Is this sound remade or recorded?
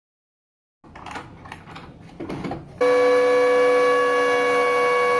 recorded